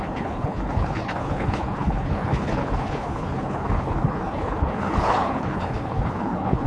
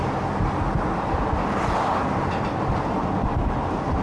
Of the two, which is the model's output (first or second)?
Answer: first